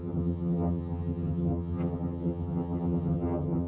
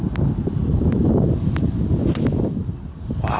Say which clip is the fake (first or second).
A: first